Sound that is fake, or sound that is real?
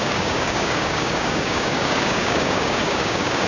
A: fake